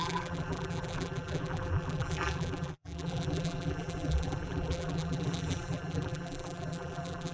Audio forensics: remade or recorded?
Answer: remade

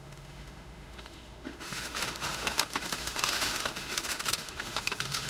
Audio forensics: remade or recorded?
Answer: remade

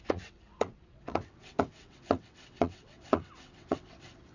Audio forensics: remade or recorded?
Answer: remade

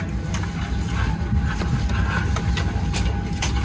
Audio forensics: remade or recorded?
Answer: recorded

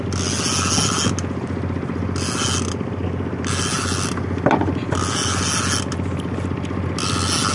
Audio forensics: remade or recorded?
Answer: recorded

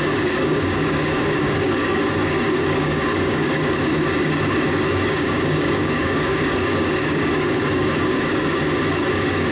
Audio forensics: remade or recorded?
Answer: remade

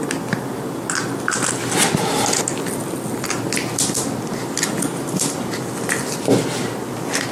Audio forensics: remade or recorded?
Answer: recorded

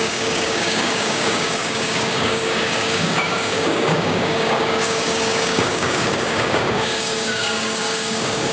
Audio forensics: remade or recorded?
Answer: remade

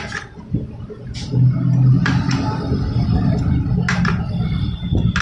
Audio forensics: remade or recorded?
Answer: recorded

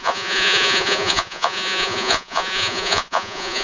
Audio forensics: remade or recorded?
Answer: remade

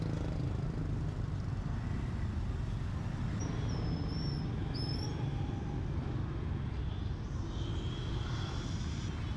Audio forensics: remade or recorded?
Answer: recorded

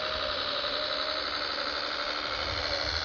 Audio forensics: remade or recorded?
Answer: recorded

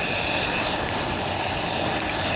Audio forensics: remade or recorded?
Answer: recorded